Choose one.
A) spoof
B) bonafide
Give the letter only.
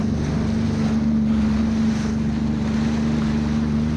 B